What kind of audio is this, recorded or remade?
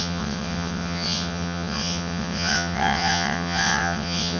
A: remade